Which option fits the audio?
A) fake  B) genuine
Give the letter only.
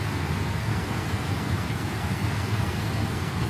A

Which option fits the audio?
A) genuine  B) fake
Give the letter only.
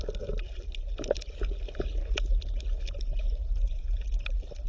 A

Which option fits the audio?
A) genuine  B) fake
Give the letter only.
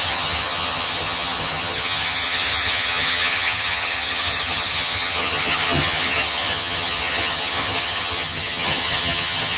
B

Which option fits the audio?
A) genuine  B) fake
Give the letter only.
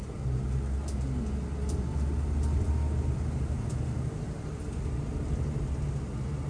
A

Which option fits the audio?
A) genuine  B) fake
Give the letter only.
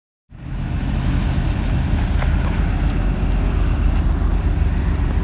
A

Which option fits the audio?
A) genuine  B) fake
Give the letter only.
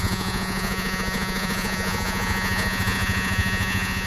B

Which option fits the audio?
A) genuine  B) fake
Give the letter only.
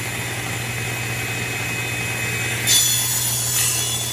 A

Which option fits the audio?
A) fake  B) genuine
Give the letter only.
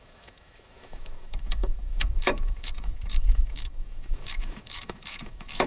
A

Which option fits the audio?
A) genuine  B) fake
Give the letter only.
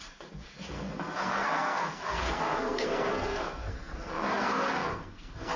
B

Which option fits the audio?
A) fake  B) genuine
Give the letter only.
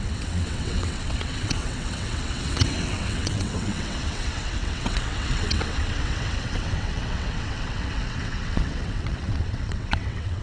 A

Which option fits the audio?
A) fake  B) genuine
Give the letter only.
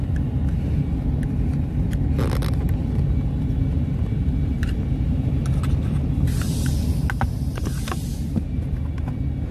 B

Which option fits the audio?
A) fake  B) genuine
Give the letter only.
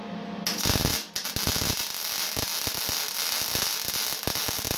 B